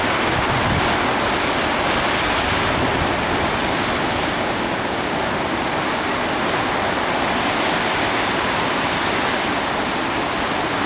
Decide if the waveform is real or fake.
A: real